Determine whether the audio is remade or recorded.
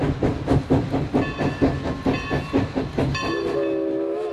recorded